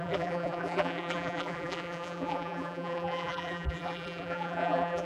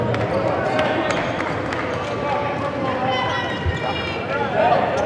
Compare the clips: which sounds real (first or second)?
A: second